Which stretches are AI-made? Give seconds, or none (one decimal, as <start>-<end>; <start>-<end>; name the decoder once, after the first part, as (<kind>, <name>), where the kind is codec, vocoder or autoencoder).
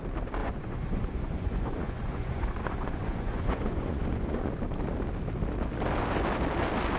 0.4-4.5 (vocoder, Vocos)